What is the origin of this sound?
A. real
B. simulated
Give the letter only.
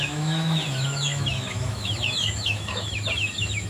B